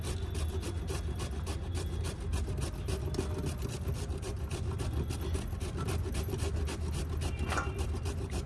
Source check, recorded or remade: recorded